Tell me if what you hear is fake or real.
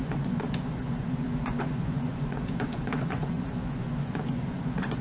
fake